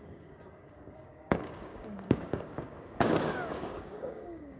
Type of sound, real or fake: fake